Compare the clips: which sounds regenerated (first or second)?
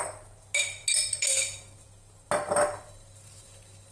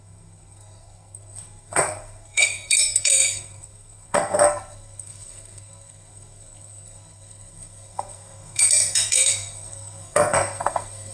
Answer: second